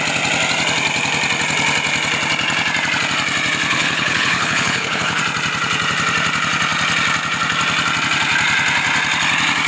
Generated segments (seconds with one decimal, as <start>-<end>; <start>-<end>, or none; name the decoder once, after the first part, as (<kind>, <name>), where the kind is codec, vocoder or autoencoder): 3.7-5.2 (codec, HILCodec)